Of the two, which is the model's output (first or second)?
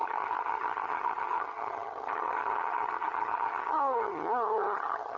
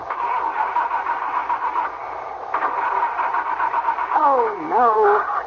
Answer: first